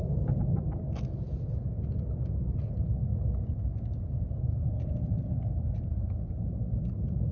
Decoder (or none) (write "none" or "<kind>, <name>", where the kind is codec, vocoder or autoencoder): none